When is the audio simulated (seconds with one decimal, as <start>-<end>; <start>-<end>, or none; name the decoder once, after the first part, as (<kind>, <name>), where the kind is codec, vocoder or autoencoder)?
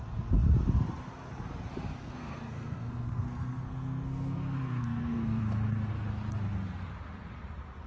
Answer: 2.0-5.4 (codec, SNAC)